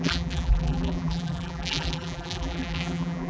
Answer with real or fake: fake